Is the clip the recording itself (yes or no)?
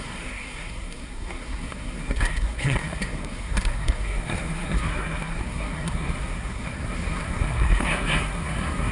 no